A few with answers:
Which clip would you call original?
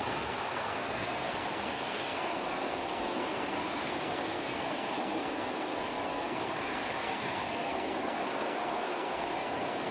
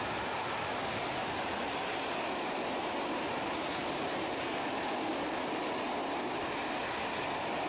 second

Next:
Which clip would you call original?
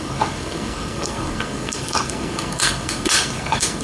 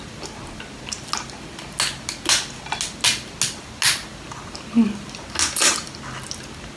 second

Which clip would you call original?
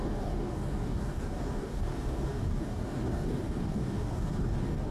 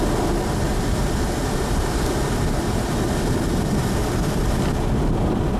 second